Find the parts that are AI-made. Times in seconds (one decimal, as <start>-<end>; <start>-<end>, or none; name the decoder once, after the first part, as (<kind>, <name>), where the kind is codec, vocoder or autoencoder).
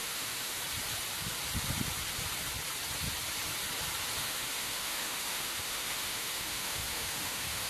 0.0-0.6 (autoencoder, DAC-VAE); 4.2-7.7